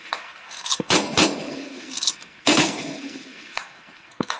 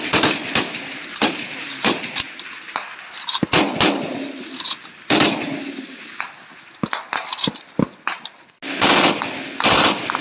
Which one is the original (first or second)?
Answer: second